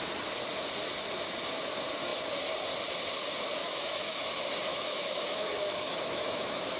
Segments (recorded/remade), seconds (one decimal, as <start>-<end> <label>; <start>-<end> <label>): 0.0-3.6 recorded; 3.6-4.2 remade; 4.2-4.7 recorded; 4.7-6.8 remade